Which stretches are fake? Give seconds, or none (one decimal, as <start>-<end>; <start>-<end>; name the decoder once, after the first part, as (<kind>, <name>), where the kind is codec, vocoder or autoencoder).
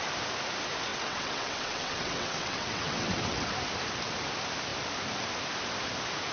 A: 0.9-3.5 (vocoder, WaveNeXt)